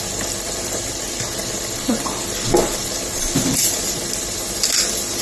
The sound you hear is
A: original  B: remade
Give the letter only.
B